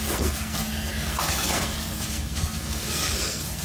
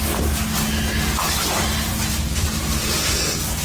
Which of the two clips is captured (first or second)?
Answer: second